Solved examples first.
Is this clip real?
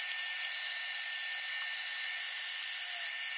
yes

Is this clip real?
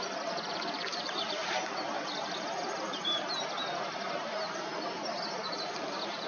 yes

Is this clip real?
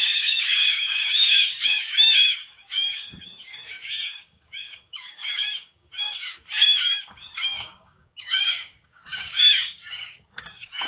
no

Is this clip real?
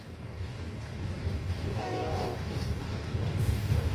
no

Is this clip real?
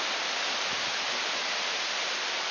yes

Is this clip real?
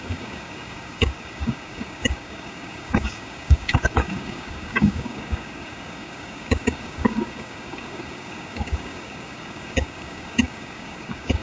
no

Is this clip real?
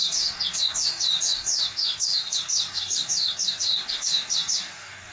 no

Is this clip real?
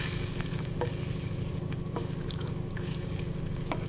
no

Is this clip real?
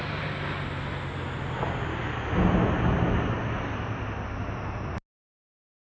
yes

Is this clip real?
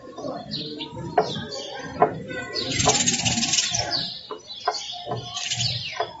yes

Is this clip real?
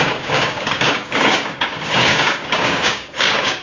no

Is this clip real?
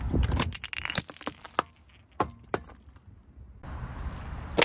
yes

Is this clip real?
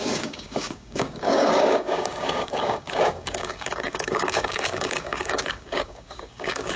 no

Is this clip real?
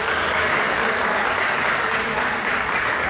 no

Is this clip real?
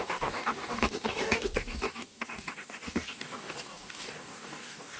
no